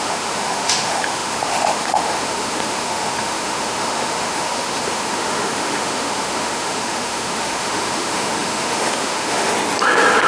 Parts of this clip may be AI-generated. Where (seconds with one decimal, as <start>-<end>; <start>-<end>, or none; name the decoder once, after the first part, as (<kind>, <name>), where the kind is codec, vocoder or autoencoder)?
0.0-9.5 (autoencoder, DAC-VAE)